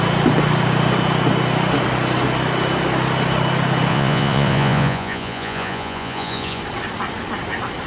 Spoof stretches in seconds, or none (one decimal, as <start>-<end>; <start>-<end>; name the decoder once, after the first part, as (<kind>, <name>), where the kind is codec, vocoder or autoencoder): 3.9-6.6 (vocoder, Vocos)